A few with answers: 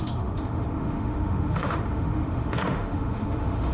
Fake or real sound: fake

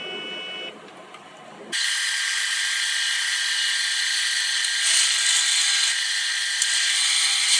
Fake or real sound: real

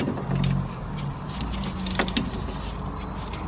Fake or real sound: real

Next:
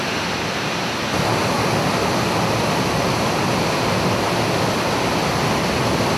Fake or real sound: real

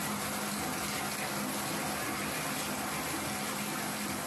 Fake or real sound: real